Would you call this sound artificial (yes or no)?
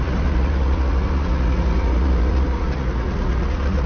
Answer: yes